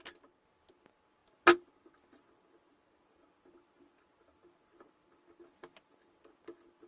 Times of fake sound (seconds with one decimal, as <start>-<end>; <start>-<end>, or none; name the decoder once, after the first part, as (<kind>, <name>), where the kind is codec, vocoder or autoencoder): none